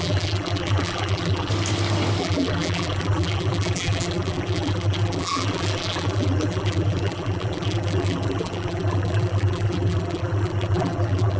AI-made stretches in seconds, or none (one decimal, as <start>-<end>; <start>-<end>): 0.0-1.5; 2.2-11.4